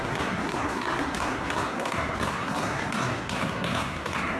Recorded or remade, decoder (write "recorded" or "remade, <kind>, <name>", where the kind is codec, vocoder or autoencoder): remade, codec, SNAC